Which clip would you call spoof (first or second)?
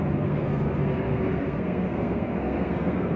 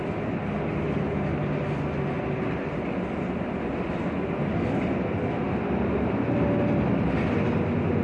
first